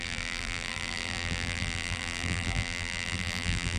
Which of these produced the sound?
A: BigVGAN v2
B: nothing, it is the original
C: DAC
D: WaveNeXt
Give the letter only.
A